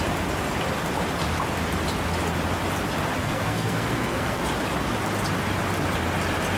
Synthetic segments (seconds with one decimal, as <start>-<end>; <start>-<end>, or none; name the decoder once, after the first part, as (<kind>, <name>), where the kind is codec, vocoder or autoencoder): 3.2-4.4 (codec, SNAC)